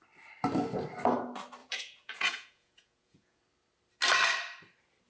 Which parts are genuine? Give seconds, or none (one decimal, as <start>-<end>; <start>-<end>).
0.0-1.6; 3.4-5.1